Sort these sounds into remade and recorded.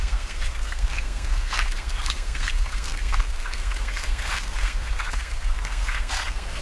remade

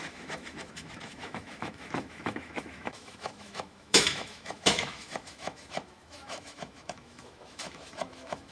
remade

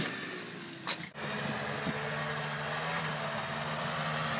recorded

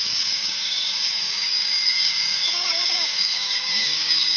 remade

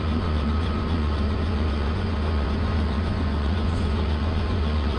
remade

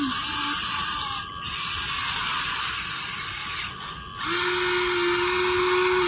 recorded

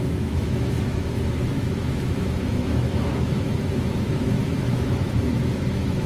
remade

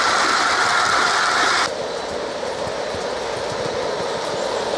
recorded